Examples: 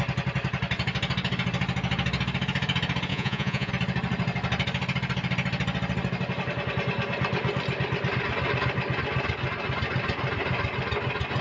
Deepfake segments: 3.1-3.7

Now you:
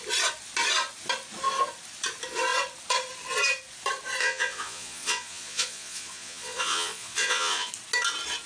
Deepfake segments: 4.2-7.7

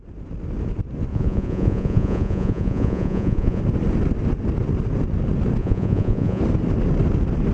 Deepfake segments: 1.1-3.6; 5.6-6.4

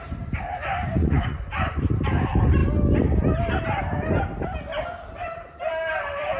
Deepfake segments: 1.0-1.8

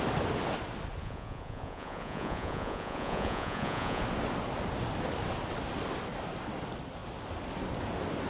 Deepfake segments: 1.0-4.0

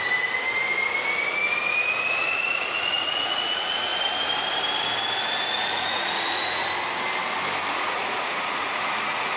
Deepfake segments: 2.1-3.9; 5.5-6.6; 7.7-9.4